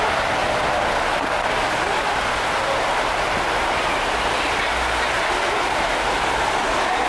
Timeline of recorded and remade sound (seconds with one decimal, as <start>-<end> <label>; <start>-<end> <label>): 0.0-7.1 recorded